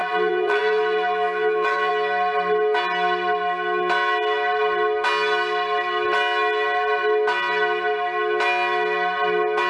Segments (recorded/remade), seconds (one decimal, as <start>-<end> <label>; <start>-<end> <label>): 0.0-1.9 remade; 1.9-9.7 recorded